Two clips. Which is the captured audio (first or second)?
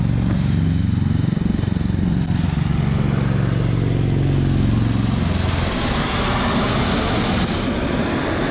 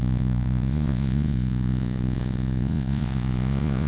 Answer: first